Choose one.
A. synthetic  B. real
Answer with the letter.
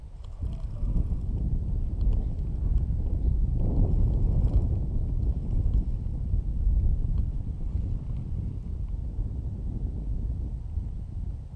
B